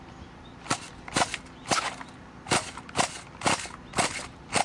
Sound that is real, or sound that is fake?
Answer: real